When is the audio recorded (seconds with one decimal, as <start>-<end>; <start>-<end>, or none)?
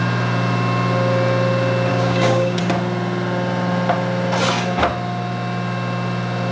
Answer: 0.0-1.9; 2.6-6.5